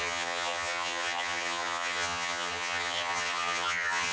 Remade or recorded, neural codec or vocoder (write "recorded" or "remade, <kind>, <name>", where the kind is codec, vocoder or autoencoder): remade, vocoder, HiFi-GAN